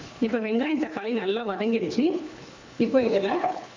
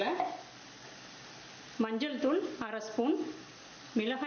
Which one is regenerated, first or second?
first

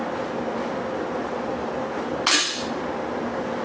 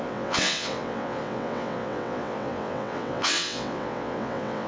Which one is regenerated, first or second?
second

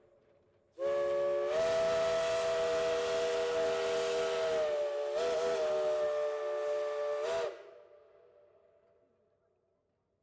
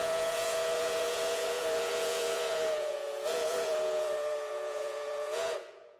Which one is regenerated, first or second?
second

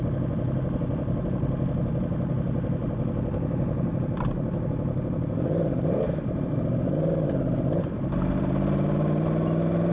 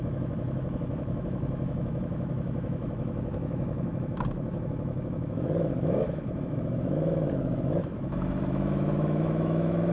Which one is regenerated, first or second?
second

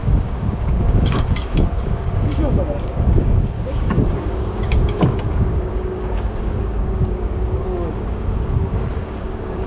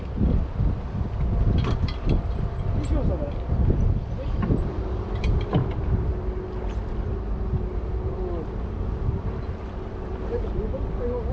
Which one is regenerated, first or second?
first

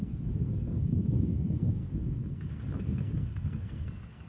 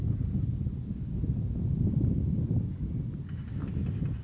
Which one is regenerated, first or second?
first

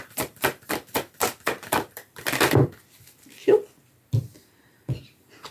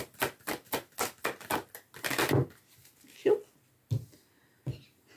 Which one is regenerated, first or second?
first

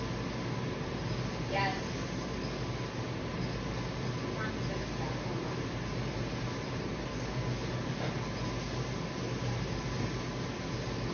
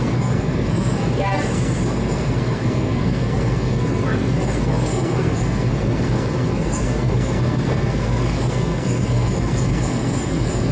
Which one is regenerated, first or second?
second